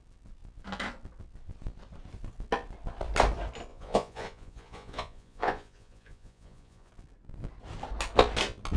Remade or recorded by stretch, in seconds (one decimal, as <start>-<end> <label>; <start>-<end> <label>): 0.0-3.7 recorded; 3.7-6.9 remade; 6.9-8.8 recorded